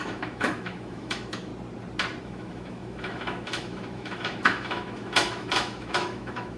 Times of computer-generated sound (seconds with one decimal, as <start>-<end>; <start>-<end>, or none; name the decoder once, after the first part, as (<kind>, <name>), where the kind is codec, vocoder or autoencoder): 0.0-1.5 (autoencoder, DAC-VAE); 2.2-6.6